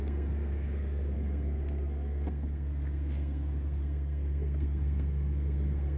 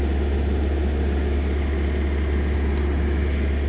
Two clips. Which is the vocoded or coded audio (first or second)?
first